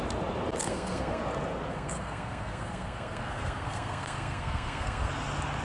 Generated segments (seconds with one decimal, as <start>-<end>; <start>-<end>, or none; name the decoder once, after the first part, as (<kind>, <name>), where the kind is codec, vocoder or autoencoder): 0.6-1.2 (codec, SNAC); 1.7-5.1